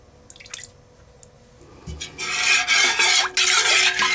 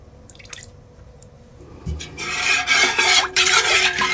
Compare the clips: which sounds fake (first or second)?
second